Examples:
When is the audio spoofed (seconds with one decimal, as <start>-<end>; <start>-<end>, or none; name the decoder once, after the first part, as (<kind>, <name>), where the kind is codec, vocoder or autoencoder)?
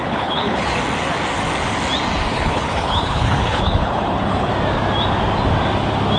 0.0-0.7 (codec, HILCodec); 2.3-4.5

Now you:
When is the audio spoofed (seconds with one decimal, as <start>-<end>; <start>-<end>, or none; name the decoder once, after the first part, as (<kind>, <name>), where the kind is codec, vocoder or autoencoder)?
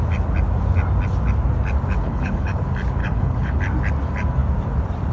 2.0-2.6 (codec, HILCodec); 3.0-3.6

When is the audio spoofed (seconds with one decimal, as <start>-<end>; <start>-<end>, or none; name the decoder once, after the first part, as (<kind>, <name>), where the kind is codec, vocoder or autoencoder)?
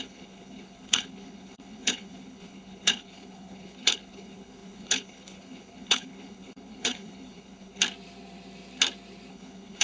0.0-7.8 (codec, HILCodec); 9.3-9.8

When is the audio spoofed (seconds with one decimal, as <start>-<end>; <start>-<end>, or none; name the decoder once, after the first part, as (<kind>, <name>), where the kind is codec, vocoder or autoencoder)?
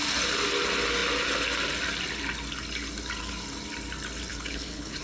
4.3-5.0 (codec, HILCodec)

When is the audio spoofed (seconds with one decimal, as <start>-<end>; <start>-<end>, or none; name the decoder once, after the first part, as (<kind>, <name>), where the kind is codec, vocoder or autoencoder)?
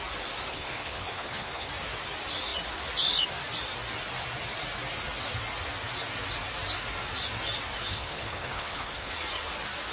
0.5-1.7 (codec, HILCodec); 7.9-9.1